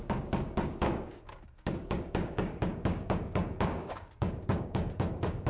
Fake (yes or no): yes